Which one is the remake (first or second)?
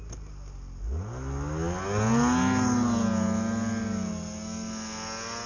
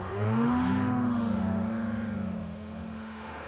second